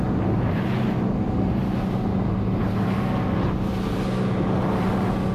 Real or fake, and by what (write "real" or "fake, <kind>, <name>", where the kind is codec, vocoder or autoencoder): real